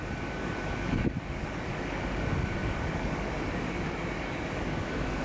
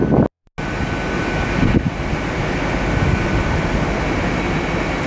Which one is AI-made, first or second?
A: first